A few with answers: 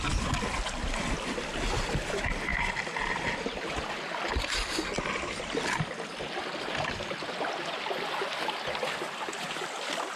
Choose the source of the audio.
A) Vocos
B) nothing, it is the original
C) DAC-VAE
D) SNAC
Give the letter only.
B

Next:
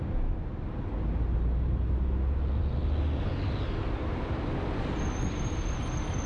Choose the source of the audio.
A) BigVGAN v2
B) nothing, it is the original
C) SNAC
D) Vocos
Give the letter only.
B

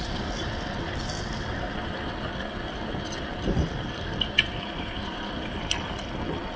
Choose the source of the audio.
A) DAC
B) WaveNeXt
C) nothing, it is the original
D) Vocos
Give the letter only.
C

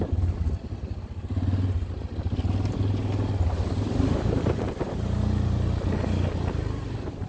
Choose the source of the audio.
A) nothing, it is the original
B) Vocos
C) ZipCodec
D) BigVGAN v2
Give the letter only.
A